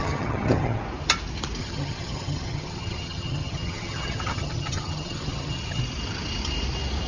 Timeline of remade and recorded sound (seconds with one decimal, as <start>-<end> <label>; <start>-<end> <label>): 0.0-0.8 remade; 0.8-1.6 recorded; 1.6-5.8 remade; 5.8-7.1 recorded